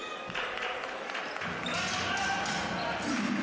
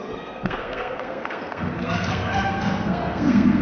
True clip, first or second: first